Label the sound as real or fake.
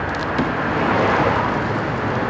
real